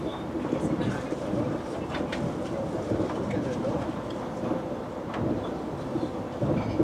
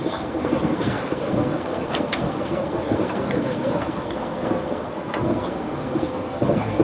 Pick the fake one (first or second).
second